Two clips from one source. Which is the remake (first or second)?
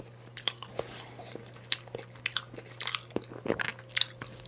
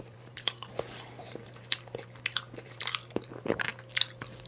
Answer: second